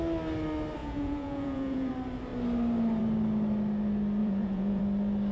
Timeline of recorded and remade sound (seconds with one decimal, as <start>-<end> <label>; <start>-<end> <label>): 0.0-0.8 recorded; 0.8-1.9 remade; 1.9-4.2 recorded; 4.2-4.8 remade; 4.8-5.3 recorded